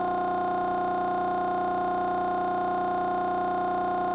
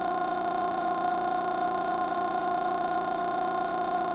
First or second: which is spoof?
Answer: second